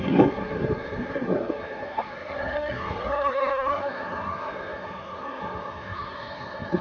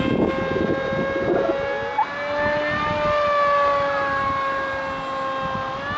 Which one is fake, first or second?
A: first